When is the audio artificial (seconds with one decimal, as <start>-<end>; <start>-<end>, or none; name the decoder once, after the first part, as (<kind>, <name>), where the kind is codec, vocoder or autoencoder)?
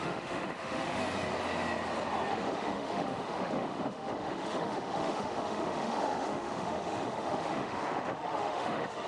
0.0-1.0 (autoencoder, DAC-VAE); 2.3-9.1